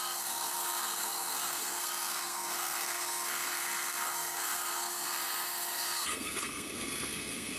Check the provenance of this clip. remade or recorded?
remade